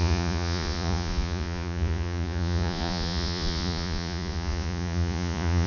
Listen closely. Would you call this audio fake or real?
fake